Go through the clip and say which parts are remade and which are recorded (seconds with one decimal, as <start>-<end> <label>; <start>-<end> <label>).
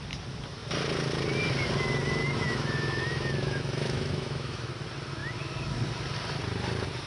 0.0-2.2 recorded; 2.2-4.7 remade; 4.7-7.1 recorded